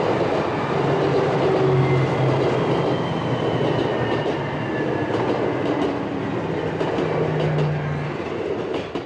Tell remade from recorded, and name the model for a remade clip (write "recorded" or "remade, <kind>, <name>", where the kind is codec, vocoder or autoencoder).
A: recorded